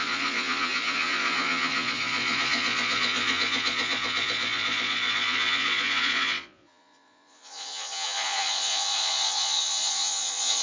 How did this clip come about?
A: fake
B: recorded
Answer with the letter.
A